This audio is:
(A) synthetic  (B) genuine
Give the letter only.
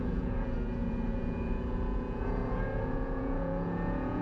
A